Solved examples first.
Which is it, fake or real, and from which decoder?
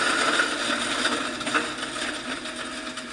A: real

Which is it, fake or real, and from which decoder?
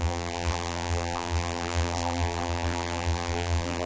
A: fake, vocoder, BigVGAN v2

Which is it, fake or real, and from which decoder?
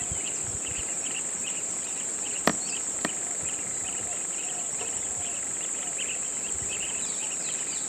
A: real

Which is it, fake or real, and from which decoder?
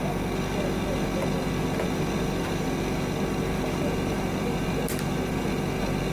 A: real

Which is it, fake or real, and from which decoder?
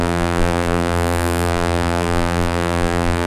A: fake, vocoder, BigVGAN v2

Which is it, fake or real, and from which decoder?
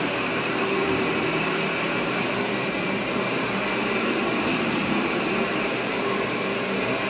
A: fake, vocoder, BigVGAN v2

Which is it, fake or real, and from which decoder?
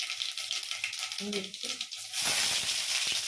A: real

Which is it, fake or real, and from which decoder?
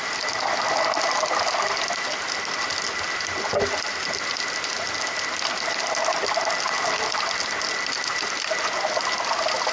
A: real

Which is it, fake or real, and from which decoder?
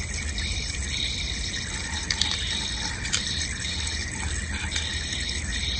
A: real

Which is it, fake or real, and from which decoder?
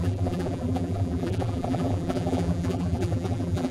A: fake, vocoder, BigVGAN v2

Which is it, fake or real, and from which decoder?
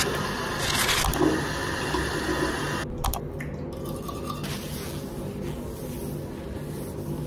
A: real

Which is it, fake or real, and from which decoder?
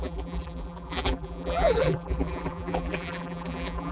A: fake, vocoder, BigVGAN v2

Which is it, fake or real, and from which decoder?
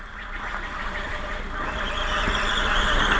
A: fake, vocoder, BigVGAN v2